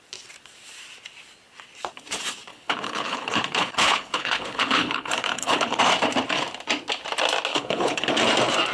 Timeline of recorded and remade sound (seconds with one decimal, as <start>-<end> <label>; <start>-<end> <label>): 0.0-2.5 recorded; 2.5-5.8 remade; 5.8-7.5 recorded; 7.5-8.1 remade; 8.1-8.7 recorded